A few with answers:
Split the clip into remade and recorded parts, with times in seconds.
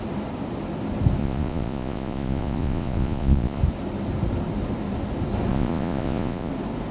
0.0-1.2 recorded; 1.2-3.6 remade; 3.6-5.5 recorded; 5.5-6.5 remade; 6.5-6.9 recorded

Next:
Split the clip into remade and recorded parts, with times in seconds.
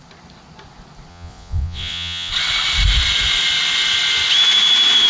0.0-1.1 recorded; 1.1-2.3 remade; 2.3-5.1 recorded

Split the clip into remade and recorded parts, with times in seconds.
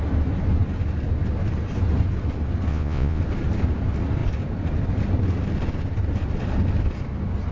0.0-2.7 recorded; 2.7-3.2 remade; 3.2-7.5 recorded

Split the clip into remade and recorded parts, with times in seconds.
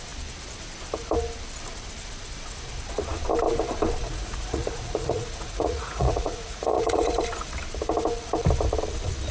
0.0-4.0 recorded; 4.0-7.2 remade; 7.2-9.3 recorded